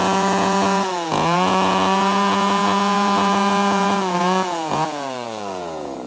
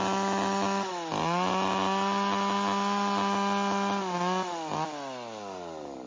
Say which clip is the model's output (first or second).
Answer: first